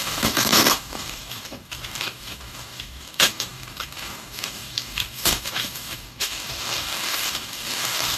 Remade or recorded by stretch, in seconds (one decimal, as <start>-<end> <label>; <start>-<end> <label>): 0.0-8.2 remade